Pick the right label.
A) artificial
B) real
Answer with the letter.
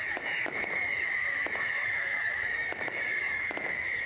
A